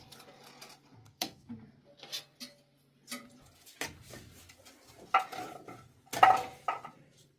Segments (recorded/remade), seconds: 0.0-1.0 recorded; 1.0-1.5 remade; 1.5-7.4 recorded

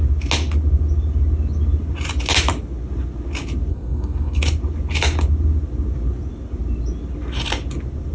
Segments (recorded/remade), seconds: 0.0-3.7 recorded; 3.7-4.4 remade; 4.4-8.1 recorded

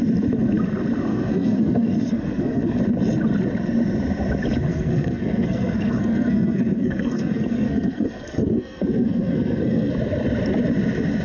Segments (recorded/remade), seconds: 0.0-1.1 recorded; 1.1-2.8 remade; 2.8-4.7 recorded; 4.7-9.9 remade; 9.9-11.2 recorded

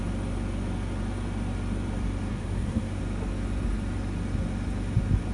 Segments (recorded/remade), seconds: 0.0-2.3 recorded; 2.3-3.0 remade; 3.0-5.3 recorded

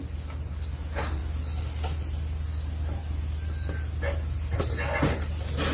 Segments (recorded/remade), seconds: 0.0-5.7 recorded

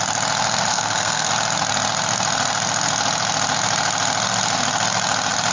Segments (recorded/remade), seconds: 0.0-0.7 recorded; 0.7-1.3 remade; 1.3-5.5 recorded

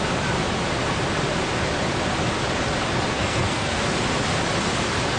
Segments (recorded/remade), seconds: 0.0-3.1 recorded; 3.1-3.8 remade; 3.8-5.2 recorded

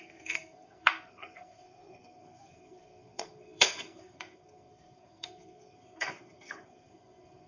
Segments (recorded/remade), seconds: 0.0-7.5 remade